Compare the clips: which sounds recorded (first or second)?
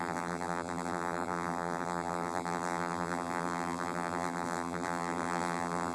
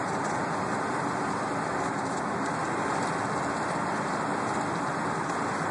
second